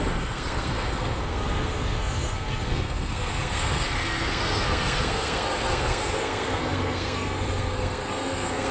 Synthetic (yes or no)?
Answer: yes